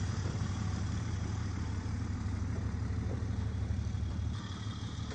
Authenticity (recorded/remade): remade